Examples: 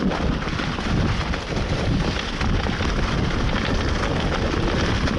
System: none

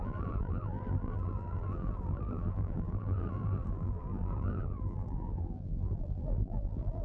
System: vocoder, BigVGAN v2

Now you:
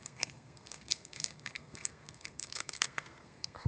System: codec, SNAC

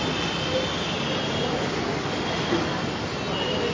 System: none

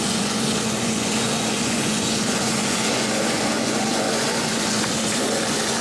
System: vocoder, Vocos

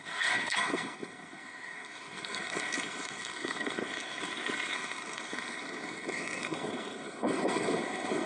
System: codec, SNAC